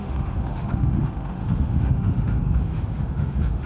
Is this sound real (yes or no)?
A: no